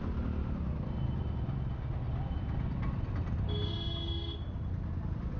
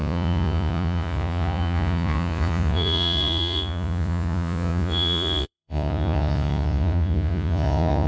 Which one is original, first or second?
first